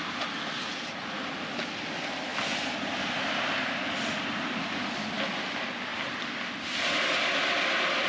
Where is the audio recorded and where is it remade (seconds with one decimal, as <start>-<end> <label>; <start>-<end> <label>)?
0.0-2.3 recorded; 2.3-4.8 remade; 4.8-5.9 recorded; 5.9-6.9 remade; 6.9-8.1 recorded